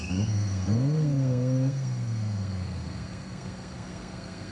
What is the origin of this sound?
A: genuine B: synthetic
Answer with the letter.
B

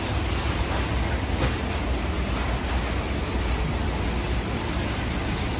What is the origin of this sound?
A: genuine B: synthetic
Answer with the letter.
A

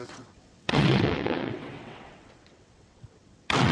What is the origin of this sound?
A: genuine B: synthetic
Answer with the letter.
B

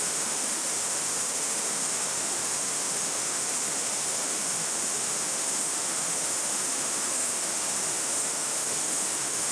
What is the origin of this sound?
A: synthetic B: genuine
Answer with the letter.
A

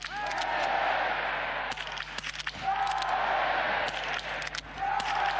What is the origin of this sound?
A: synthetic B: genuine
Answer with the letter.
B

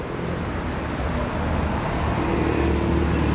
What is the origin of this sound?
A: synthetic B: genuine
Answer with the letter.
B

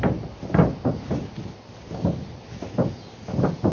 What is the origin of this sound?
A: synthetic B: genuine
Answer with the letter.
B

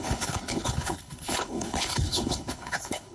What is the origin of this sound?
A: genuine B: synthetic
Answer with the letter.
B